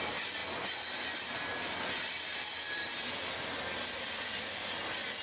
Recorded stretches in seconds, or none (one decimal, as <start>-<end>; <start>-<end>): 0.0-5.2